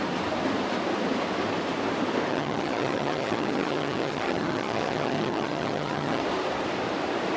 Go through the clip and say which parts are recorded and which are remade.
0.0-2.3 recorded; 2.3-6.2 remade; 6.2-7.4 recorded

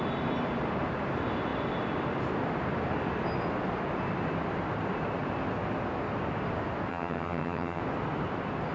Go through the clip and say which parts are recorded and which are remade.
0.0-6.9 recorded; 6.9-7.8 remade; 7.8-8.7 recorded

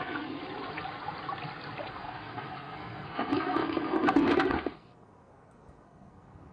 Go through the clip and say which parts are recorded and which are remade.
0.0-0.4 remade; 0.4-1.9 recorded; 1.9-6.5 remade

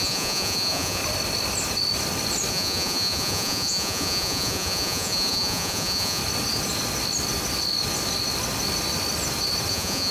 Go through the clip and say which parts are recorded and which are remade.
0.0-1.0 remade; 1.0-2.5 recorded; 2.5-6.2 remade; 6.2-9.7 recorded; 9.7-10.1 remade

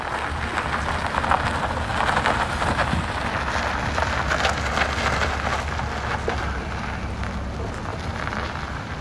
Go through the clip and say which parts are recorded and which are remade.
0.0-7.9 recorded; 7.9-9.0 remade

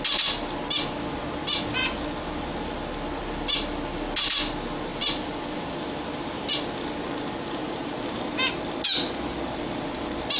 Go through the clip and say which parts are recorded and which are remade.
0.0-4.9 recorded; 4.9-6.5 remade; 6.5-7.6 recorded; 7.6-8.2 remade; 8.2-10.4 recorded

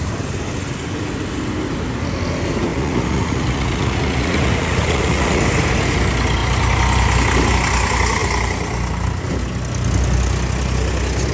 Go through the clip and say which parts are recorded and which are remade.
0.0-2.7 recorded; 2.7-5.4 remade; 5.4-11.3 recorded

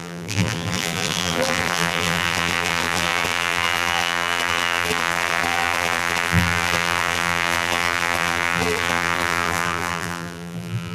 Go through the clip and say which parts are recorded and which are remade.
0.0-10.9 remade